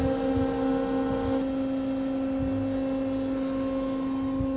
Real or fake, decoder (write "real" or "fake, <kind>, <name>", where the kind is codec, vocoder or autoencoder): real